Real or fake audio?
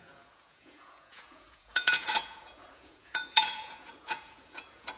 fake